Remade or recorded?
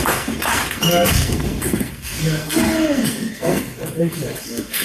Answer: remade